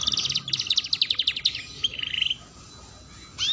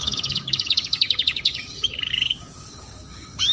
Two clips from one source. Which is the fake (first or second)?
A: second